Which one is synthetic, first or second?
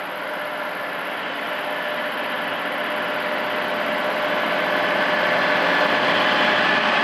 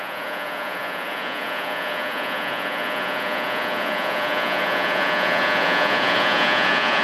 second